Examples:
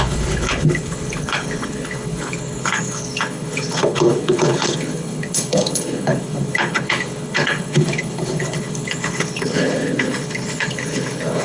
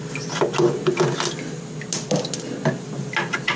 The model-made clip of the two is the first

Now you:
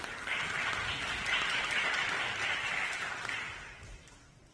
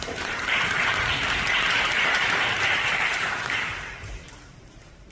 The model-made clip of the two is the second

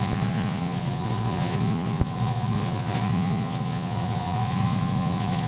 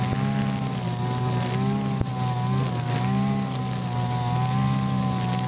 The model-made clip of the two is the first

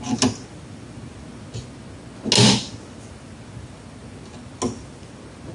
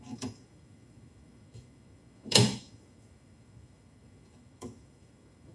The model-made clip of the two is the second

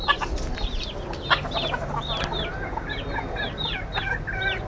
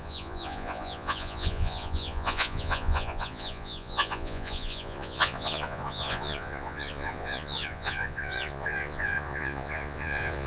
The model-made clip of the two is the second